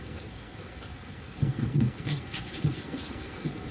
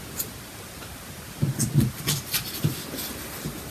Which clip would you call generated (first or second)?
first